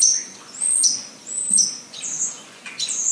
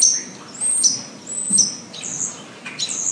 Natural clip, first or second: second